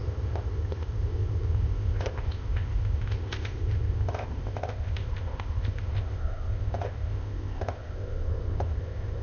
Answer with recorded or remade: remade